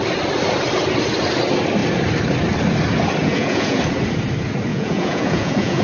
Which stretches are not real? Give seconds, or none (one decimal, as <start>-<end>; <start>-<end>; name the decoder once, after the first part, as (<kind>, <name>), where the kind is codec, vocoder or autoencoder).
3.2-3.8 (vocoder, Vocos); 4.7-5.8